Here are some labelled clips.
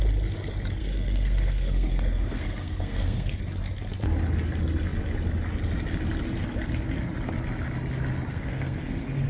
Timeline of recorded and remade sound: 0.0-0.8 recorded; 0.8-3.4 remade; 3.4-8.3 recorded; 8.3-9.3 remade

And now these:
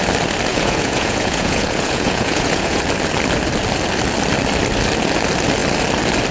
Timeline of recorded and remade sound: 0.0-0.5 recorded; 0.5-2.8 remade; 2.8-6.3 recorded